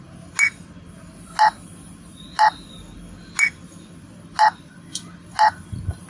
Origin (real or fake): real